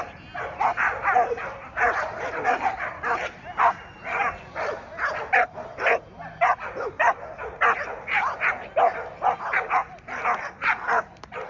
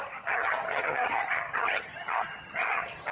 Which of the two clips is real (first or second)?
first